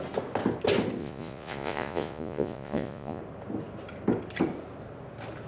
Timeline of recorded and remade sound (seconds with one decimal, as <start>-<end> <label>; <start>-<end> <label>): 0.0-1.0 recorded; 1.0-3.2 remade; 3.2-5.5 recorded